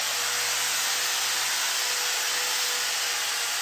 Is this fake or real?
real